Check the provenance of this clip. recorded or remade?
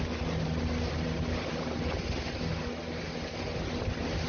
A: recorded